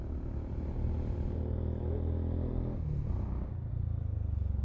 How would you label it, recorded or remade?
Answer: recorded